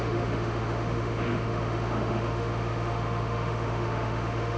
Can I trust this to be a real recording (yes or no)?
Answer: no